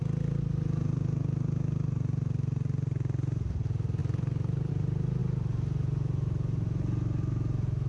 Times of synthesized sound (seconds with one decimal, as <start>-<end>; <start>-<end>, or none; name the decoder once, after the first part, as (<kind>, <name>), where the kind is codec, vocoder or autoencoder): 4.0-4.7 (vocoder, BigVGAN v2)